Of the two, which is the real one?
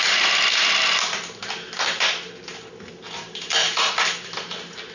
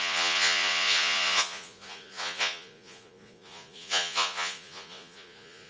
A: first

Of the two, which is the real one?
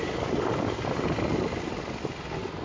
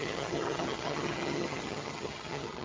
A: first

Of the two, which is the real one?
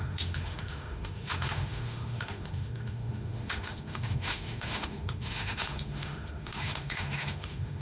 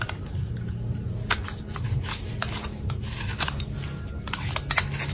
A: second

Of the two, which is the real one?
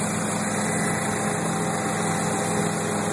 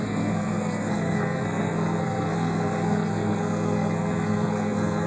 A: first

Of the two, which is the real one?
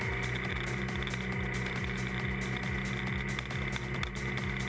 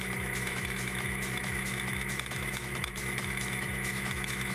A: first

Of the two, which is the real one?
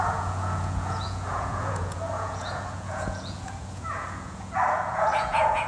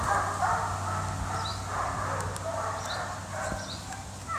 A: second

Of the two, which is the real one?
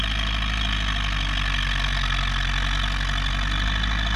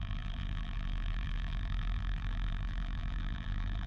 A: first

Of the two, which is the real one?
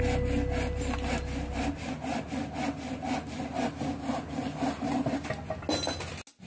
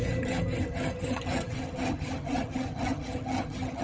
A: first